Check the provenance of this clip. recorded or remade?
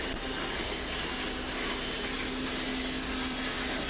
recorded